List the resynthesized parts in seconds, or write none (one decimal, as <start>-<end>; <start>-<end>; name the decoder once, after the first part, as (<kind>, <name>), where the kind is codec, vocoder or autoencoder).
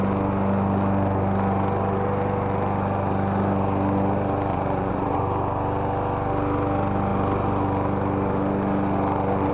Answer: 4.5-5.2 (vocoder, Vocos)